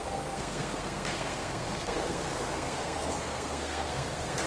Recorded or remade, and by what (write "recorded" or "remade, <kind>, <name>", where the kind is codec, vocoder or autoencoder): remade, codec, SNAC